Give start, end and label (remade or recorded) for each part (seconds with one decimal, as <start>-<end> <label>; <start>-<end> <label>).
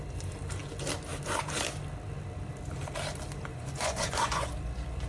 0.0-3.5 recorded; 3.5-4.5 remade; 4.5-5.1 recorded